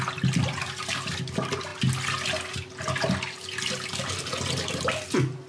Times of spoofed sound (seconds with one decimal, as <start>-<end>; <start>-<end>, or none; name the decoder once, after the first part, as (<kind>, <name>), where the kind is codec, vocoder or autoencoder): none